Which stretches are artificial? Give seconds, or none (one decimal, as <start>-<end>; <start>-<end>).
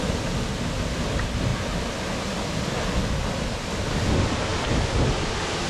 none